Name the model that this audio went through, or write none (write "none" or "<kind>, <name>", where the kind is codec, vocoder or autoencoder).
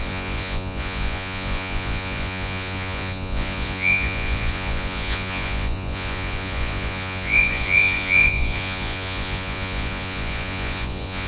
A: vocoder, Vocos